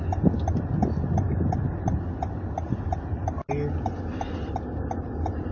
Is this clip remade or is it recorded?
recorded